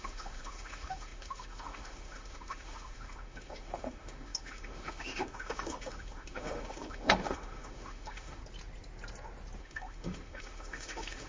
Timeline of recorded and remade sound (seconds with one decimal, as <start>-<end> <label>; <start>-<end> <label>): 0.0-8.4 remade; 8.4-9.6 recorded; 9.6-11.3 remade